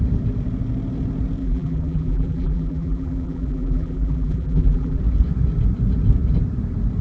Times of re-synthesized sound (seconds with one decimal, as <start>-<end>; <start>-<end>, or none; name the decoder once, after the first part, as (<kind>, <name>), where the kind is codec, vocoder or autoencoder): 1.4-5.0 (vocoder, BigVGAN v2)